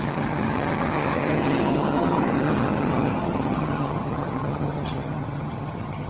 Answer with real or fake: fake